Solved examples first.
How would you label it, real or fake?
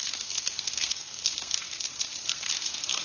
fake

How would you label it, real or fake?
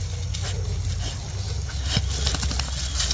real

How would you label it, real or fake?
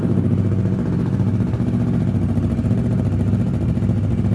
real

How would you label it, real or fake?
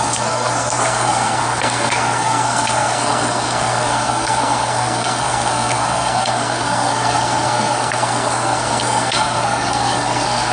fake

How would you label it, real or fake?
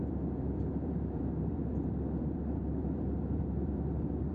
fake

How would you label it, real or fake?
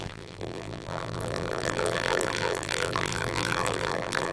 fake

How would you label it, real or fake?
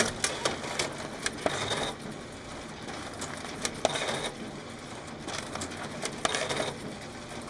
real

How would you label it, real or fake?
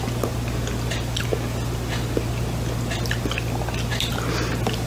real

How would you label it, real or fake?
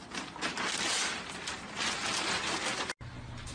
real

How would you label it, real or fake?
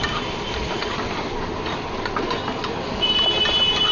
real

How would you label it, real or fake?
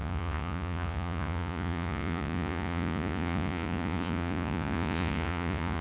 fake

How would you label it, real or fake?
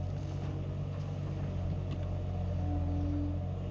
real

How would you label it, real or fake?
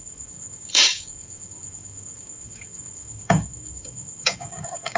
fake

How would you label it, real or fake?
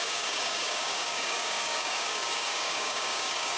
fake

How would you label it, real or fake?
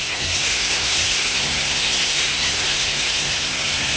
fake